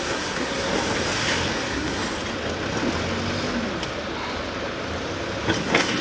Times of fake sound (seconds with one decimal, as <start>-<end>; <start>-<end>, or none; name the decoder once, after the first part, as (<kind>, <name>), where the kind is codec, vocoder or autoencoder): 0.0-0.7 (codec, SNAC); 1.6-2.0; 5.6-6.0